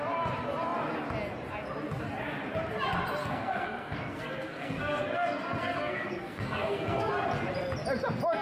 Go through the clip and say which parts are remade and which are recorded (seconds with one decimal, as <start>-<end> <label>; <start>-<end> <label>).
0.0-3.2 recorded; 3.2-7.1 remade; 7.1-8.4 recorded

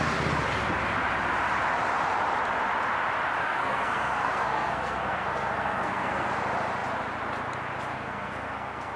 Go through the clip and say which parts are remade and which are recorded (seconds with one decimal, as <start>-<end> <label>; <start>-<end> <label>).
0.0-3.4 recorded; 3.4-6.3 remade; 6.3-7.9 recorded; 7.9-9.0 remade

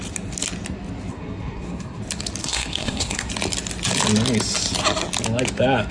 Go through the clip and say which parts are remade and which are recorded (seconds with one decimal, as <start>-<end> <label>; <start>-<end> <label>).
0.0-1.1 recorded; 1.1-2.0 remade; 2.0-2.4 recorded; 2.4-3.3 remade; 3.3-5.9 recorded